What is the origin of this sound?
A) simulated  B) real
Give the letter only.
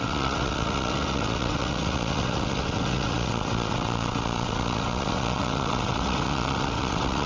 A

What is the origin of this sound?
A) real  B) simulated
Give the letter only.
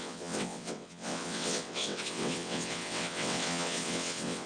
B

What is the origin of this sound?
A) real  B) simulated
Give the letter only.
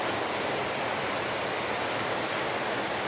A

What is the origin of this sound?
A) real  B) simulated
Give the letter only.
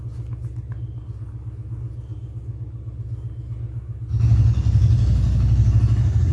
A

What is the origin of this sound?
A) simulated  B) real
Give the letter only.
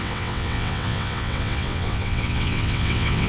A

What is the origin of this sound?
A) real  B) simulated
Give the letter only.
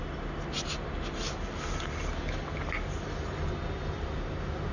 A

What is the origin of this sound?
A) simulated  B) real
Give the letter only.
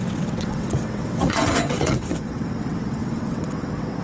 A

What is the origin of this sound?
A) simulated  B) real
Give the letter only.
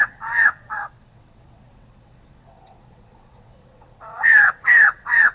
A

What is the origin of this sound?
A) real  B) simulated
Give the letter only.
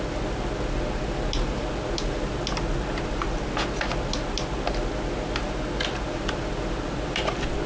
A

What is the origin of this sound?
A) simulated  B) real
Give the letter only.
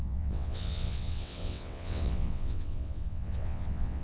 A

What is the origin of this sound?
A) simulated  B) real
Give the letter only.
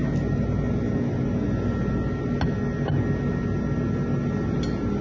B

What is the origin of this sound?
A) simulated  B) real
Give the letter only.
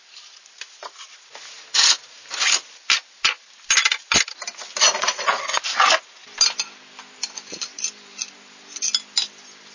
B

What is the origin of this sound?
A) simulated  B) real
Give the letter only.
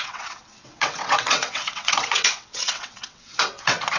A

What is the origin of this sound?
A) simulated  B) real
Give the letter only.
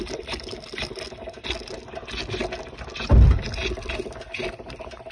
B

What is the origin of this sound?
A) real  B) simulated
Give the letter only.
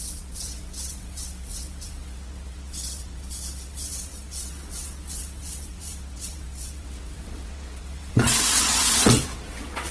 B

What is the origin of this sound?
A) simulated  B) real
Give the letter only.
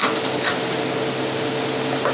B